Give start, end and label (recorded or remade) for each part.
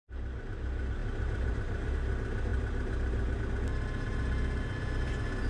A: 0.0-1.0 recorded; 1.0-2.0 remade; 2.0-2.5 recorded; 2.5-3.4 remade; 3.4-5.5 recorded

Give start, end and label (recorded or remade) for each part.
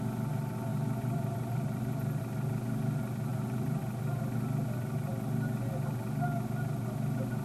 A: 0.0-0.7 recorded; 0.7-2.2 remade; 2.2-3.3 recorded; 3.3-3.8 remade; 3.8-7.4 recorded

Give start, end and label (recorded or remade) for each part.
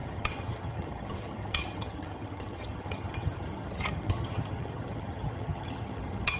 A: 0.0-6.4 remade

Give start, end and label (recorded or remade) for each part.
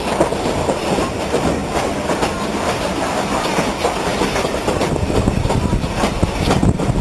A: 0.0-7.0 recorded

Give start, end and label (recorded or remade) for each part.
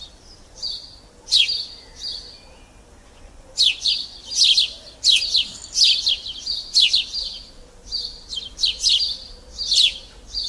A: 0.0-3.0 recorded; 3.0-4.2 remade; 4.2-10.5 recorded